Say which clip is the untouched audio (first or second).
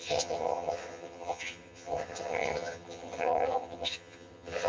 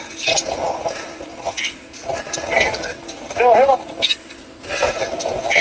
second